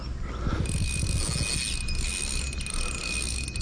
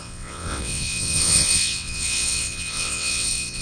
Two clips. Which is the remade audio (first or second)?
second